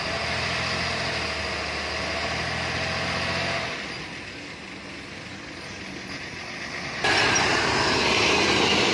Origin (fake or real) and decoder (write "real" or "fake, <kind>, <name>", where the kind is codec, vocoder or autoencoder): real